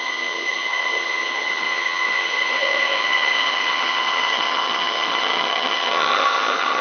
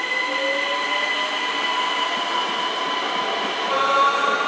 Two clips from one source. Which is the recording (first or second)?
second